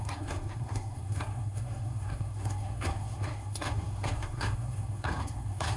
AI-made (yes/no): yes